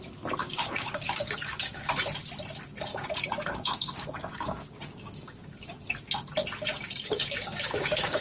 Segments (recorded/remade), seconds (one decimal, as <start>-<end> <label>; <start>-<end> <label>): 0.0-0.4 recorded; 0.4-1.9 remade; 1.9-2.9 recorded; 2.9-5.7 remade; 5.7-6.7 recorded; 6.7-8.2 remade